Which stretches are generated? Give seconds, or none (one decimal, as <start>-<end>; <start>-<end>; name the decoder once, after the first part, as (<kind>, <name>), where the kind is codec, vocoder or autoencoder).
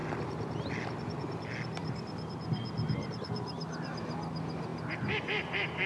none